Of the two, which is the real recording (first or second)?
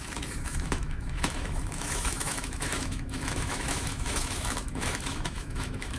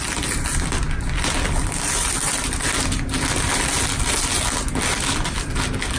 second